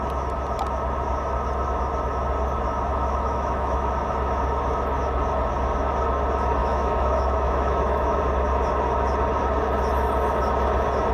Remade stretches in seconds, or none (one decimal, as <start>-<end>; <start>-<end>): 2.9-3.9; 6.6-8.2